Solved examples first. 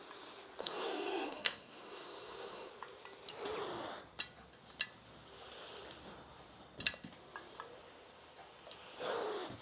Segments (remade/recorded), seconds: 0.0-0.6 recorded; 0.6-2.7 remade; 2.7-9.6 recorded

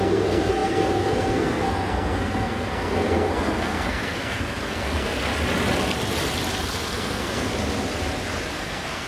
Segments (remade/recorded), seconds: 0.0-5.3 remade; 5.3-6.6 recorded; 6.6-7.5 remade; 7.5-8.5 recorded; 8.5-9.1 remade

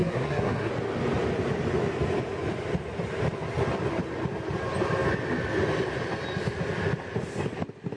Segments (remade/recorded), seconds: 0.0-0.7 remade; 0.7-8.0 recorded